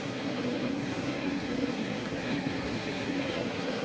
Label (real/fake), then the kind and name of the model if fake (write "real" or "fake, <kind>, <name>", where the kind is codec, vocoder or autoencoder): fake, codec, SNAC